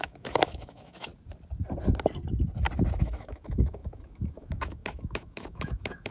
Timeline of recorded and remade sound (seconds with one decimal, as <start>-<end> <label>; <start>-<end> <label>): 0.0-1.1 remade; 1.1-3.0 recorded; 3.0-6.1 remade